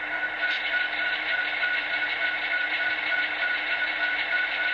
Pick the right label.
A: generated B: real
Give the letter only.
A